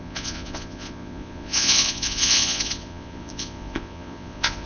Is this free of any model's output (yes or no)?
no